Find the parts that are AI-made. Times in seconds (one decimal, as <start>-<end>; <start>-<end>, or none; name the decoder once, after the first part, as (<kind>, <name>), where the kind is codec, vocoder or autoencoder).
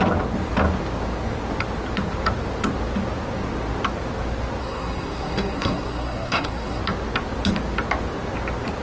4.6-6.8 (codec, SNAC)